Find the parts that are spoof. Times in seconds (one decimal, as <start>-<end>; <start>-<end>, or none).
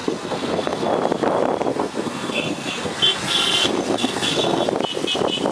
0.0-0.9; 1.7-4.6